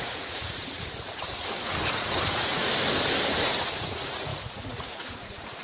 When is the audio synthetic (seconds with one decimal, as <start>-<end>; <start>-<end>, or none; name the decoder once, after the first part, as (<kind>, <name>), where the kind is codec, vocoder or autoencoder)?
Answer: 0.0-1.3 (vocoder, Vocos); 1.9-2.7; 3.3-5.6

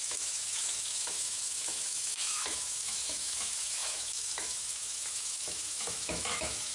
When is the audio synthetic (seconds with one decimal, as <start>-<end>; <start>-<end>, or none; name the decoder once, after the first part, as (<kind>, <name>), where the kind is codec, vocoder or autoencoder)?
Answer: 0.0-6.7 (autoencoder, DAC-VAE)

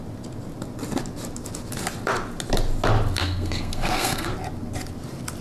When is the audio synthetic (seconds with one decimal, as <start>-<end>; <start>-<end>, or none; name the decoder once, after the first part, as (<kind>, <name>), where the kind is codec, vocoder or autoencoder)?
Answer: 3.2-4.3 (codec, SNAC)

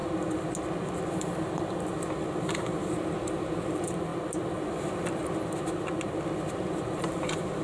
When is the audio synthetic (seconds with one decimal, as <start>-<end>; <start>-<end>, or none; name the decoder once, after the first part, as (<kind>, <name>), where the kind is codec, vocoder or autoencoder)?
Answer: 2.4-4.1 (vocoder, BigVGAN v2); 6.5-7.6

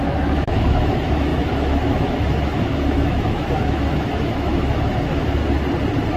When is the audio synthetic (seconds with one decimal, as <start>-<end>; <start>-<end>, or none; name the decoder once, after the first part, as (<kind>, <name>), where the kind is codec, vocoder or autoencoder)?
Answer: 0.0-5.4 (autoencoder, DAC-VAE)

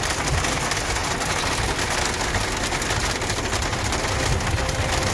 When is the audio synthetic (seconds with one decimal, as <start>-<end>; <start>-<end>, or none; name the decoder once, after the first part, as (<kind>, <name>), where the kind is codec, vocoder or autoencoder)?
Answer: none

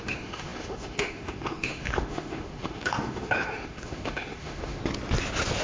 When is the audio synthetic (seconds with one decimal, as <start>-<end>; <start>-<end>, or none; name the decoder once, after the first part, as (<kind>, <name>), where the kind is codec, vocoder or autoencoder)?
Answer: 0.0-4.8 (autoencoder, DAC-VAE)

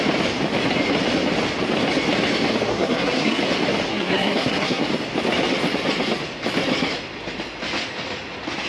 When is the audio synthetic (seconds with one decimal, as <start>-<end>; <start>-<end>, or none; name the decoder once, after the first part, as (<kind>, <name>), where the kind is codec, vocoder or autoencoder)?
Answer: 2.7-3.4 (codec, SNAC); 3.9-4.8